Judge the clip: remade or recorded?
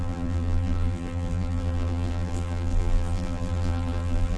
remade